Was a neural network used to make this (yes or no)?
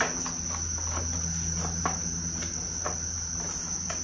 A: no